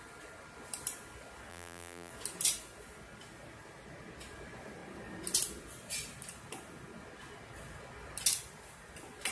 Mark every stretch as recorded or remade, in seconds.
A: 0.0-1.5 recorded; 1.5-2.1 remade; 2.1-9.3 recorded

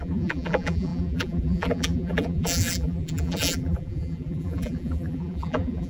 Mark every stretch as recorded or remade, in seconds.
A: 0.0-5.9 remade

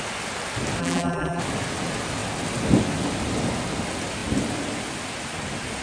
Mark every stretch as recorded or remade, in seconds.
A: 0.0-0.8 recorded; 0.8-1.4 remade; 1.4-5.8 recorded